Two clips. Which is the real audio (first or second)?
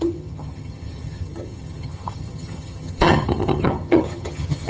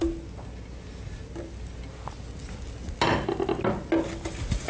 second